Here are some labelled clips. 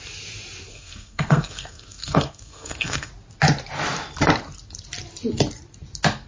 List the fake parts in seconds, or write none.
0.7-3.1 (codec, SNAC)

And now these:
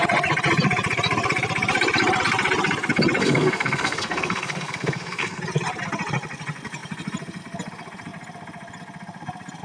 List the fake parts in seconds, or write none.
3.2-5.4 (codec, SNAC)

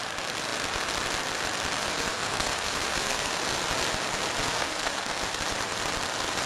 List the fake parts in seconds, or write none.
1.8-3.3 (codec, SNAC); 4.4-5.2

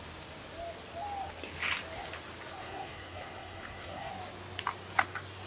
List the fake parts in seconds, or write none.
2.6-4.1 (codec, SNAC)

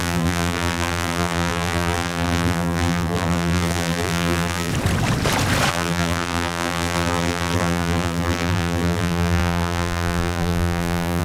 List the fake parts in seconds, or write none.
0.0-4.7 (vocoder, BigVGAN v2); 5.7-11.2

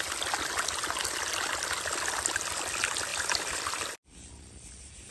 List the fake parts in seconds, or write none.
3.1-3.7 (vocoder, BigVGAN v2)